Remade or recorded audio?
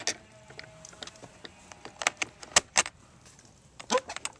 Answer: recorded